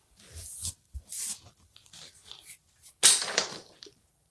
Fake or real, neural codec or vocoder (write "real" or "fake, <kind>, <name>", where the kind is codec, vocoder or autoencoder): real